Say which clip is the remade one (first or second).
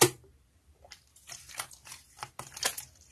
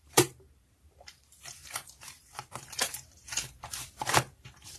second